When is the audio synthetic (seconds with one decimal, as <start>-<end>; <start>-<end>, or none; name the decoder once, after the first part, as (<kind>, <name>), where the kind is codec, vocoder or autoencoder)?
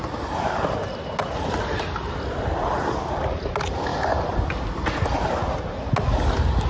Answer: none